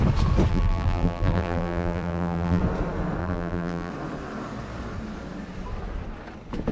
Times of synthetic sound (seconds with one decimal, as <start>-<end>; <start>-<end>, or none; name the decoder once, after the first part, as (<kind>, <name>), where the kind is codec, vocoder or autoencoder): 0.5-2.6 (vocoder, BigVGAN v2); 3.2-3.9